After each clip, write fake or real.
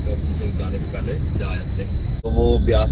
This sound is fake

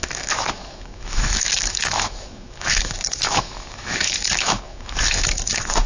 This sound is fake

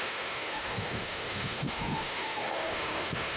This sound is fake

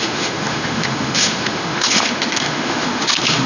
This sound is fake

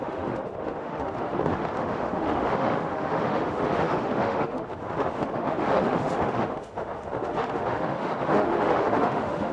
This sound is fake